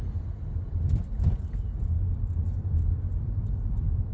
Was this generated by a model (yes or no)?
yes